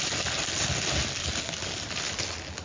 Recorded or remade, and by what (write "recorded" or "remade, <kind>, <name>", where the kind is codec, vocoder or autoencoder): recorded